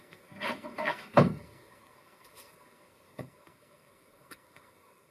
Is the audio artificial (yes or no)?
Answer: yes